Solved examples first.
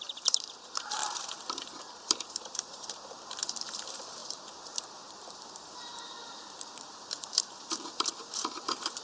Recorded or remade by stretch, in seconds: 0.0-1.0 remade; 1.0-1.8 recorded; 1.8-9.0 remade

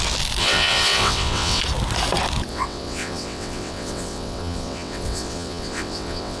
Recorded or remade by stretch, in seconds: 0.0-0.4 recorded; 0.4-1.6 remade; 1.6-2.5 recorded; 2.5-6.4 remade

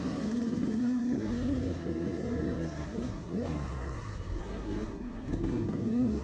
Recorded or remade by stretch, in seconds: 0.0-6.2 remade